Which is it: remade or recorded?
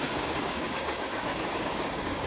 remade